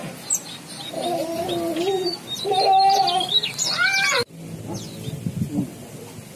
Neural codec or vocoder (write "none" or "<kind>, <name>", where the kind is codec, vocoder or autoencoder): none